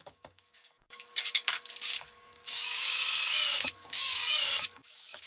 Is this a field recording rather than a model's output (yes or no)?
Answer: no